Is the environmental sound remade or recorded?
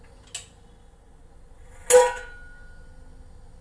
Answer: recorded